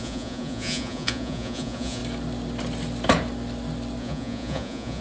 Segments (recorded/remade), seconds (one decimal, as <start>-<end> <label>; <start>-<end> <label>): 0.0-2.0 remade; 2.0-4.0 recorded; 4.0-5.0 remade